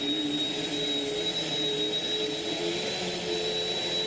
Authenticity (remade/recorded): recorded